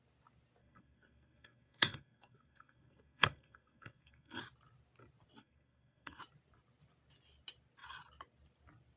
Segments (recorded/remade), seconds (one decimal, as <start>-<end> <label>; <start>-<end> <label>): 0.0-0.6 recorded; 0.6-4.4 remade; 4.4-5.4 recorded; 5.4-6.2 remade; 6.2-9.0 recorded